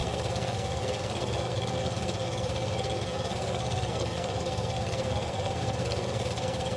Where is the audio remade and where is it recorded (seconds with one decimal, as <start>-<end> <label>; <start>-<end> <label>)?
0.0-6.8 remade